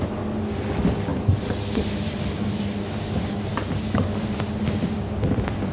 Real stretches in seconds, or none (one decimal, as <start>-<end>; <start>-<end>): 0.0-5.7